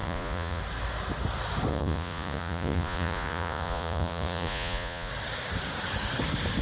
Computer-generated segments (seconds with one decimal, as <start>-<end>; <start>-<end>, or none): 0.0-0.6; 1.7-5.1